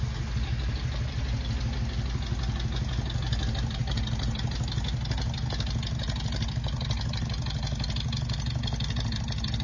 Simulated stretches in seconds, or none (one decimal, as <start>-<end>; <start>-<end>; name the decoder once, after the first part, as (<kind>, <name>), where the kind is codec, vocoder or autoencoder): none